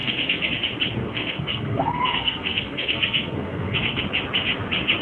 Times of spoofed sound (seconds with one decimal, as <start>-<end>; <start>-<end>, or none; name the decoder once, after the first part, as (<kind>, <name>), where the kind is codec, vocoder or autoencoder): 0.0-0.5 (codec, SNAC); 1.0-4.0